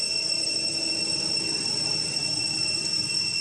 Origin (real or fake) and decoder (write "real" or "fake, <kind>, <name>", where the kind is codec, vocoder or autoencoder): real